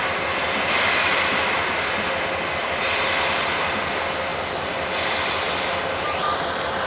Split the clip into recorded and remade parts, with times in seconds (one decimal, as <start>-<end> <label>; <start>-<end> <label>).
0.0-4.3 recorded; 4.3-6.9 remade